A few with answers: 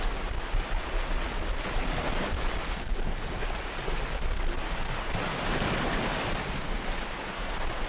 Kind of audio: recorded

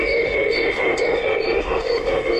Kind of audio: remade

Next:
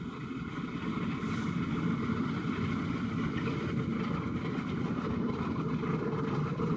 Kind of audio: recorded